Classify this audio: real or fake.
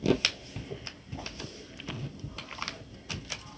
real